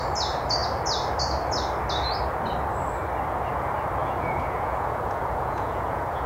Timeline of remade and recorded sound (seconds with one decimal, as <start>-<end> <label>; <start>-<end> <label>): 0.0-4.0 recorded; 4.0-6.3 remade